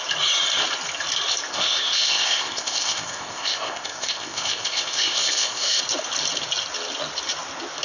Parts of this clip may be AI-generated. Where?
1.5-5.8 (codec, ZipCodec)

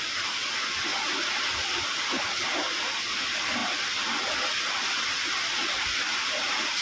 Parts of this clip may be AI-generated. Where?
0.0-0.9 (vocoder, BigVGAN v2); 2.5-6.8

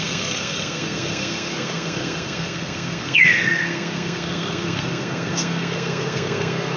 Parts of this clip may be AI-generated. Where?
0.0-6.8 (codec, SNAC)